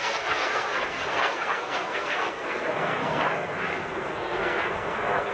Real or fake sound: fake